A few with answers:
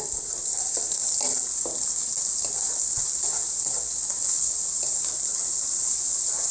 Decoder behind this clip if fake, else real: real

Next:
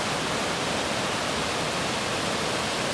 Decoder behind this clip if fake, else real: real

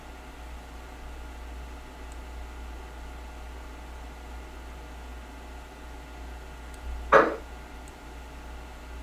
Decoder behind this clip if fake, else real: real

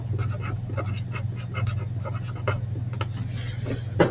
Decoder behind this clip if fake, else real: real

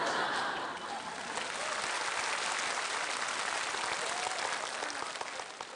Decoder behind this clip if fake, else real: real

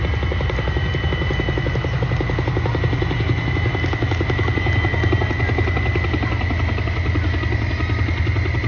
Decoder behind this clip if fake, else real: real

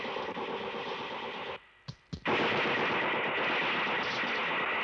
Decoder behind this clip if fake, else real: real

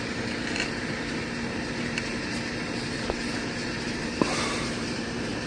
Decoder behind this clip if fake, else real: fake, vocoder, BigVGAN v2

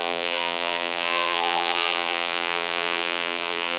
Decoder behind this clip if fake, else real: fake, vocoder, BigVGAN v2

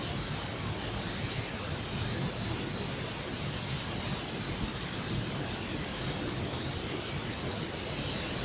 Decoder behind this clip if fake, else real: real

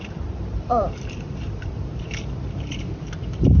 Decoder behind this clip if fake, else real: fake, vocoder, BigVGAN v2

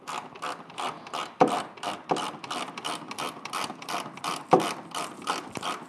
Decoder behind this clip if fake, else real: real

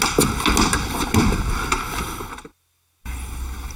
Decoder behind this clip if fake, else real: real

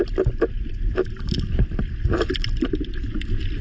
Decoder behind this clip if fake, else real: real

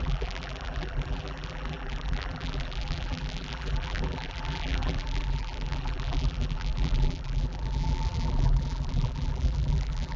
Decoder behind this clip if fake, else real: fake, vocoder, BigVGAN v2